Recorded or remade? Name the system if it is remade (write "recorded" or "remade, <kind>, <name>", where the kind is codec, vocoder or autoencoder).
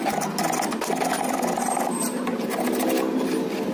recorded